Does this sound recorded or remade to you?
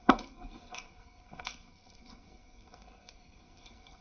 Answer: remade